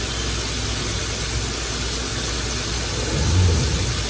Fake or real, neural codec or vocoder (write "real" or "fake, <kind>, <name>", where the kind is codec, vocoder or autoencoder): real